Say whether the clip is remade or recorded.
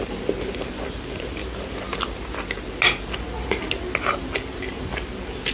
recorded